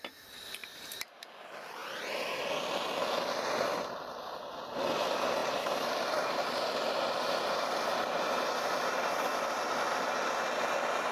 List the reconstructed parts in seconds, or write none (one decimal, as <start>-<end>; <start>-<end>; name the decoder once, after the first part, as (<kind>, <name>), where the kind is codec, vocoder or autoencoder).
0.6-1.2 (vocoder, BigVGAN v2); 1.8-2.4; 5.4-9.5